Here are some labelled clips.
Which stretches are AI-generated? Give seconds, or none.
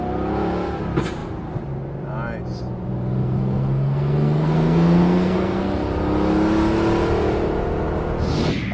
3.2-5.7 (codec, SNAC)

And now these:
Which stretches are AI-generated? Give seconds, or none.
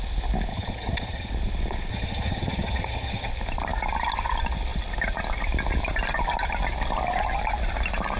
0.5-1.3 (vocoder, HiFi-GAN); 1.9-3.3